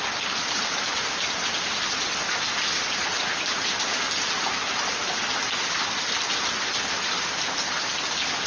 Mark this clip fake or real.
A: real